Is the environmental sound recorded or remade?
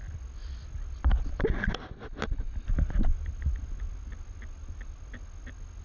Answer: recorded